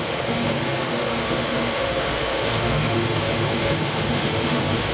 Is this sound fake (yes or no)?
yes